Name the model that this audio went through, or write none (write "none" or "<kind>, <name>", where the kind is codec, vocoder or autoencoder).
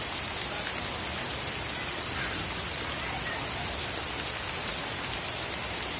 none